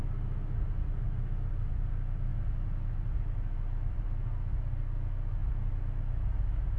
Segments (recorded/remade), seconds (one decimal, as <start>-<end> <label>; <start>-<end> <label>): 0.0-1.7 recorded; 1.7-2.3 remade; 2.3-2.9 recorded; 2.9-5.4 remade; 5.4-6.0 recorded; 6.0-6.8 remade